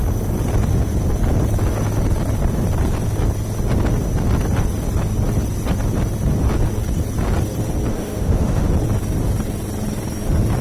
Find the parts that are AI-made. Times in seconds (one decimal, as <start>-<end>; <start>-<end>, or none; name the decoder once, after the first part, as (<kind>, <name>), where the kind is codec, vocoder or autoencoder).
7.9-8.7 (autoencoder, DAC-VAE)